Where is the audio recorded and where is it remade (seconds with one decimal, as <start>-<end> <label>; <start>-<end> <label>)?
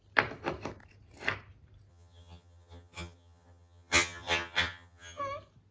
0.0-1.9 recorded; 1.9-5.2 remade; 5.2-5.7 recorded